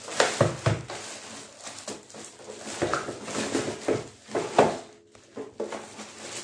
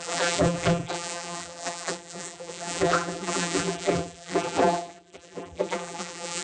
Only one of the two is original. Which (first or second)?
first